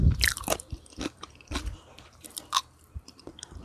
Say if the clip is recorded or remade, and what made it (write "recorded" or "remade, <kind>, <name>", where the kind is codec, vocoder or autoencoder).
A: remade, vocoder, BigVGAN v2